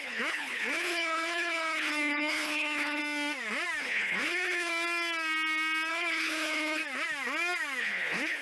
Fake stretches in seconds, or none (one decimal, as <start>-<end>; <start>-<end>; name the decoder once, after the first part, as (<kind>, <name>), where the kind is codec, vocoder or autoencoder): 0.0-3.0 (codec, HILCodec); 3.8-4.7; 5.9-6.8; 7.8-8.4